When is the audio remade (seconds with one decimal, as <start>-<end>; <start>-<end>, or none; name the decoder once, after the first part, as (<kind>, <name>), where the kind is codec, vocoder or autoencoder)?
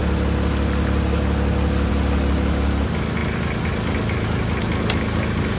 none